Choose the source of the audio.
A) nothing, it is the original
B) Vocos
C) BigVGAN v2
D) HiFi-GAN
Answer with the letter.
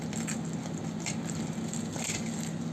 A